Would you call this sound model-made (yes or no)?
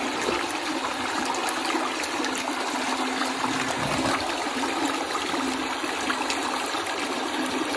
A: no